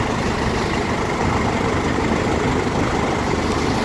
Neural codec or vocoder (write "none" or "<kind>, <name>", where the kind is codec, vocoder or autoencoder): none